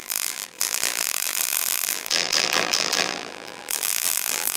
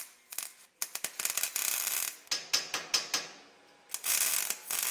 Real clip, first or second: second